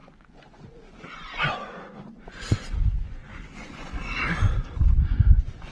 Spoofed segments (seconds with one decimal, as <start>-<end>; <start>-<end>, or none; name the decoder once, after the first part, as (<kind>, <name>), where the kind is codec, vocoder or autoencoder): 0.0-5.7 (vocoder, Vocos)

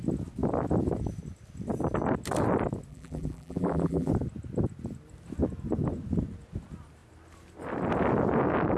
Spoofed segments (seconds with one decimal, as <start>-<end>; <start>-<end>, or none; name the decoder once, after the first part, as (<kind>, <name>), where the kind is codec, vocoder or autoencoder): 2.9-4.1 (vocoder, BigVGAN v2)

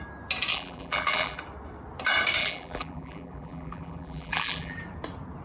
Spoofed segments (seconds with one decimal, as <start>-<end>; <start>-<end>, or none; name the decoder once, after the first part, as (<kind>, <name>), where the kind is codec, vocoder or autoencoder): 0.5-1.4 (vocoder, BigVGAN v2); 2.4-4.8